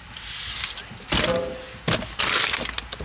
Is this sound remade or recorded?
recorded